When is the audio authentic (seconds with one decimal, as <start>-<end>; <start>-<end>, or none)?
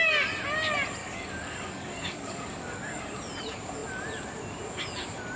0.0-1.0; 3.0-5.4